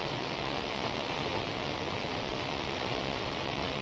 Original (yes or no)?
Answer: no